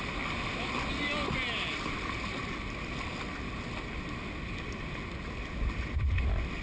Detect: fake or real real